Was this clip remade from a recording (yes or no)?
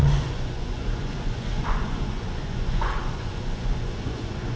yes